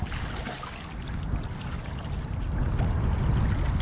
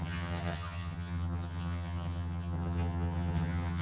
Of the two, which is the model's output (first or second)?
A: second